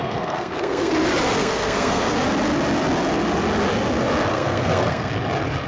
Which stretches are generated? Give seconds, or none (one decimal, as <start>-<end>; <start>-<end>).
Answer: 0.0-0.9; 1.4-2.1; 4.3-5.1